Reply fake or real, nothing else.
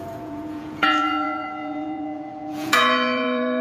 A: fake